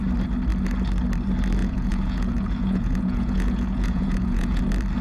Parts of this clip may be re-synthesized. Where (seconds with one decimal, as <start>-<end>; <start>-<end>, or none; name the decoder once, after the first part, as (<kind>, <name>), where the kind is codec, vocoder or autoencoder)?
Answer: 1.6-4.6 (vocoder, Vocos)